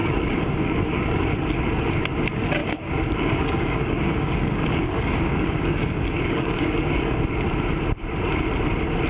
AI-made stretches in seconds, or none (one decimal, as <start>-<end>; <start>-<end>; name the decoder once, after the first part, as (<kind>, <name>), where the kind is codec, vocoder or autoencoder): 0.0-1.2 (codec, DAC); 2.6-7.2